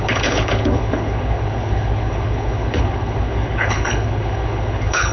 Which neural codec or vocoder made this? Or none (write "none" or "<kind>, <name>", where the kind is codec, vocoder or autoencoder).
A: codec, HILCodec